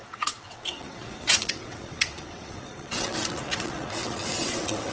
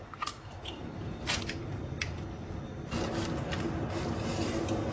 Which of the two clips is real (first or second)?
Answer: second